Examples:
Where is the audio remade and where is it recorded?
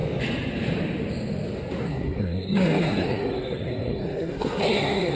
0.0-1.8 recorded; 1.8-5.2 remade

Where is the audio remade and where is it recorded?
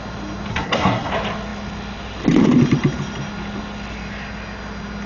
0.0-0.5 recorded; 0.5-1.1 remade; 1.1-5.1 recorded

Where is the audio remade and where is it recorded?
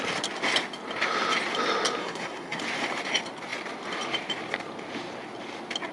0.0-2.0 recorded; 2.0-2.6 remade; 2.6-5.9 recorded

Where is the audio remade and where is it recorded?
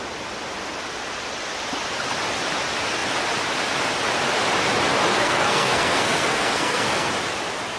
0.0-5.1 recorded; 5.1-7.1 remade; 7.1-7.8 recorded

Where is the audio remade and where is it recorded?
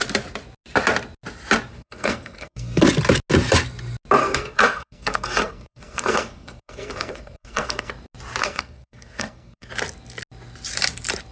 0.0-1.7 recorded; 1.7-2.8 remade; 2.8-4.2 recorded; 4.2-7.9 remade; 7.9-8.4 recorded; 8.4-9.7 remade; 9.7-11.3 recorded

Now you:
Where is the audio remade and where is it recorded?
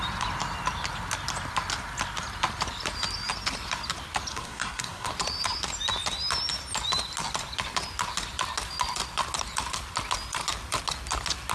0.0-4.3 recorded; 4.3-5.1 remade; 5.1-11.5 recorded